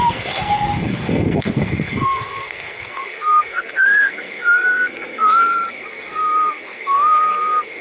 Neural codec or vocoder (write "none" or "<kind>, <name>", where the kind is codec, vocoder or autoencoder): codec, SNAC